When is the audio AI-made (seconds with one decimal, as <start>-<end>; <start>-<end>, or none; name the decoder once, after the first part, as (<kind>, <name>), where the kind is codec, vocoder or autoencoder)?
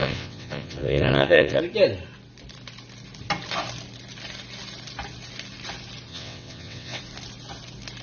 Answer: 0.0-1.6 (vocoder, WaveNeXt); 6.1-7.0